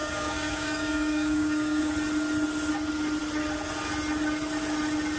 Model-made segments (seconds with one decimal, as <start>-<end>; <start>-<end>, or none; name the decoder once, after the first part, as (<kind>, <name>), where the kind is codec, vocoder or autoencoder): 0.0-1.9 (codec, DAC)